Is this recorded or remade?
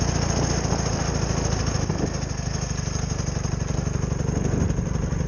recorded